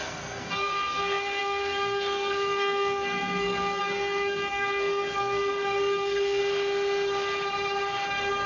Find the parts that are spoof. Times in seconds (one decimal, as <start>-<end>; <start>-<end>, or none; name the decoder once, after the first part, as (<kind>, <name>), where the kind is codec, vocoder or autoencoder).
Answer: 0.0-6.4 (codec, SNAC)